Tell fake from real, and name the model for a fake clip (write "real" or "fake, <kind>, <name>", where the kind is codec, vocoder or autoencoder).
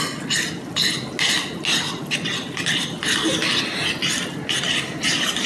real